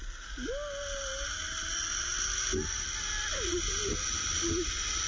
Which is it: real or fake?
real